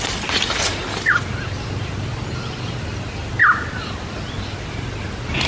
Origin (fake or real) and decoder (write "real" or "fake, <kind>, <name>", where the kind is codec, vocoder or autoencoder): real